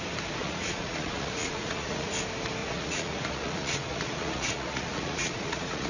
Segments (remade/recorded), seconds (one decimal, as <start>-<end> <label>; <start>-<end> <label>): 0.0-0.4 recorded; 0.4-2.1 remade; 2.1-2.6 recorded; 2.6-5.9 remade